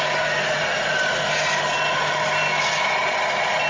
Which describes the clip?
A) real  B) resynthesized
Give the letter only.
A